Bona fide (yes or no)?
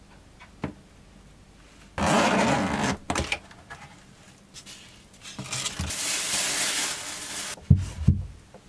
yes